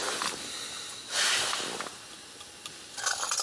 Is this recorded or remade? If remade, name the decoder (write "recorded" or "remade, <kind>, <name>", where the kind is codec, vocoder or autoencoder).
recorded